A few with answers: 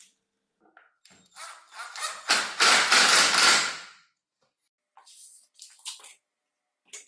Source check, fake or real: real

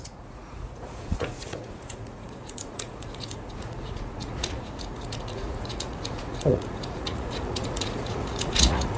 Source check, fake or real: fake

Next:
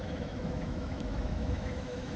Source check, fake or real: fake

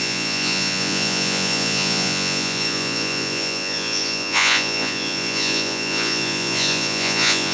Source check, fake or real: fake